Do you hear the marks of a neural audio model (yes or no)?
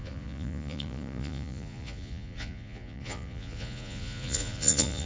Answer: yes